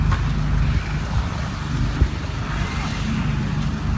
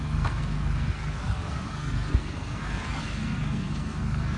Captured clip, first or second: first